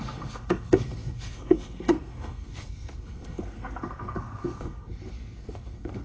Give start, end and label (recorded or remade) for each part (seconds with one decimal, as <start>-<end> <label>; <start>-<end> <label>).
0.0-6.0 remade